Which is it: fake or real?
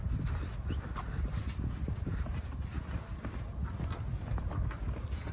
real